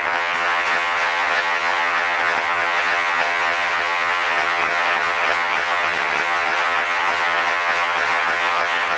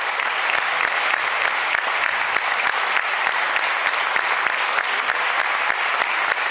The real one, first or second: second